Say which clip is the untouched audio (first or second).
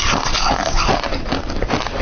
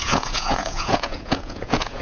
first